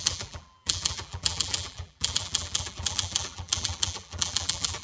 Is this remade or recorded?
remade